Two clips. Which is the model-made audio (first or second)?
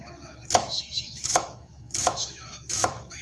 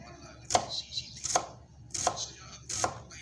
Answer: first